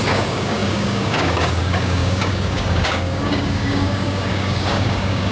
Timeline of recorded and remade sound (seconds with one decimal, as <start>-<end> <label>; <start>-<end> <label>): 0.0-5.3 remade